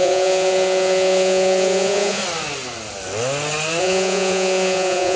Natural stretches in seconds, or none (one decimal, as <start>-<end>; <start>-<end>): 2.2-3.8